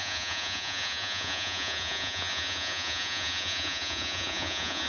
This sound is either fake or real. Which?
fake